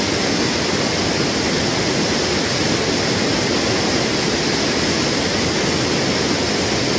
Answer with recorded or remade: recorded